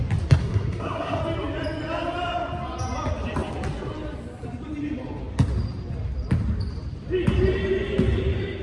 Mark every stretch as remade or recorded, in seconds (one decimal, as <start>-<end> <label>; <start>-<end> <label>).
0.0-0.4 recorded; 0.4-1.2 remade; 1.2-8.6 recorded